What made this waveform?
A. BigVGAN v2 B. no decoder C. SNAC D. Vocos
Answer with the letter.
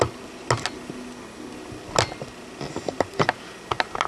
B